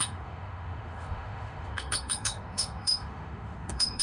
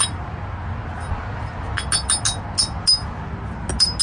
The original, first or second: second